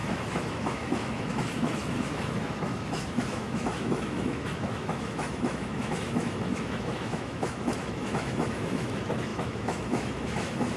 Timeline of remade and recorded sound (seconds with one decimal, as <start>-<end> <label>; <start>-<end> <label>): 0.0-10.8 remade